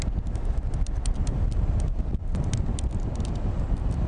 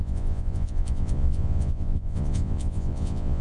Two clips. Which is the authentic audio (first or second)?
first